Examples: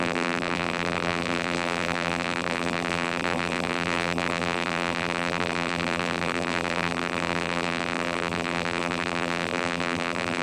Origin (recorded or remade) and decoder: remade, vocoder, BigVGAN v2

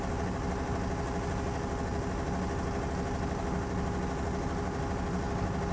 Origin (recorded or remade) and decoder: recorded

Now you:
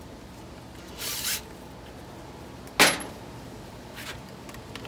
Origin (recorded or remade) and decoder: recorded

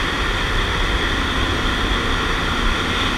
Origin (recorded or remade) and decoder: recorded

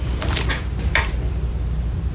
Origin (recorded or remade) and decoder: remade, vocoder, BigVGAN v2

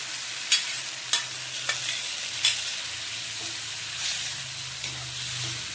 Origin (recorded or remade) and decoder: recorded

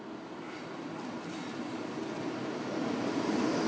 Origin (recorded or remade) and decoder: recorded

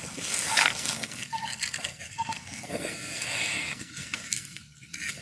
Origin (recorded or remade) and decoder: remade, codec, SNAC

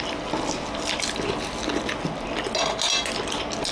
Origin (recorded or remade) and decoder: recorded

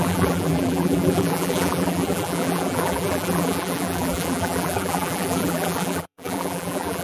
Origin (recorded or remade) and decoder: remade, vocoder, BigVGAN v2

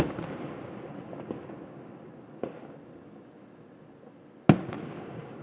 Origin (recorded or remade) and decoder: recorded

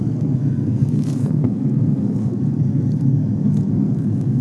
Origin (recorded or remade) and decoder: remade, codec, SNAC